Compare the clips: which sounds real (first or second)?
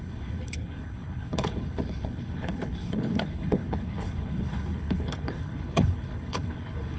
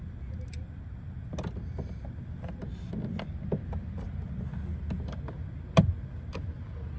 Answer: second